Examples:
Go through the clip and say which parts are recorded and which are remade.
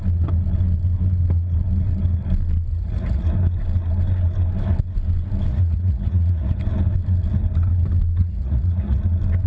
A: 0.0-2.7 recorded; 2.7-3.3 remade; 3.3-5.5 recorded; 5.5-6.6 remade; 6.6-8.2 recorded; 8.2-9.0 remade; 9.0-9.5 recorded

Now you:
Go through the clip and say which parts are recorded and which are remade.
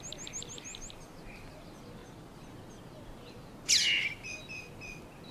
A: 0.0-5.3 recorded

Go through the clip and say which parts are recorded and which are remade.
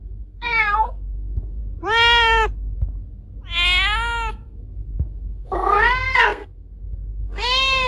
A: 0.0-1.6 remade; 1.6-4.3 recorded; 4.3-7.9 remade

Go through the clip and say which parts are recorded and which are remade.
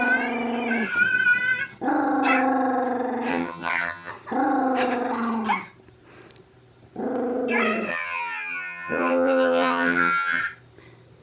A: 0.0-3.3 recorded; 3.3-4.1 remade; 4.1-7.9 recorded; 7.9-10.4 remade; 10.4-11.2 recorded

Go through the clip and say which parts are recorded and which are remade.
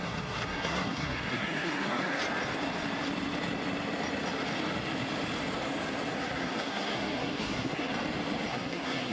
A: 0.0-2.2 remade; 2.2-6.1 recorded; 6.1-7.9 remade; 7.9-8.5 recorded; 8.5-9.1 remade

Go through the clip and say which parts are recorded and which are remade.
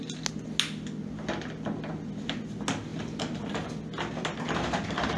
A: 0.0-5.2 recorded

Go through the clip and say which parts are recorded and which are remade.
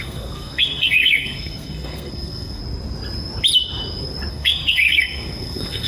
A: 0.0-2.6 remade; 2.6-4.3 recorded; 4.3-5.9 remade